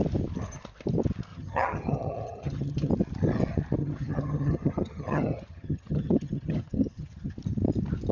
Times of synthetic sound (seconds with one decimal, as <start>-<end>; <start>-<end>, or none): 1.3-2.9; 3.8-7.3